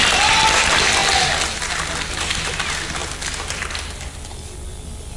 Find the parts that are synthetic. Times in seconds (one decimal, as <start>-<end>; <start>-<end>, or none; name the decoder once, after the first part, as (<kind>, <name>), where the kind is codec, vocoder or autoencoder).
none